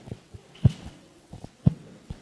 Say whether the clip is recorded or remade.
remade